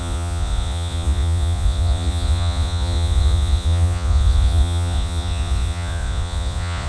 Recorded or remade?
remade